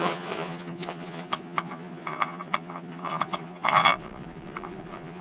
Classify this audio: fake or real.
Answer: fake